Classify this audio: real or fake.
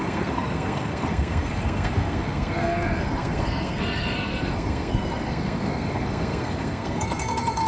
fake